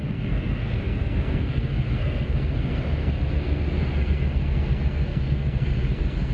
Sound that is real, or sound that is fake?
fake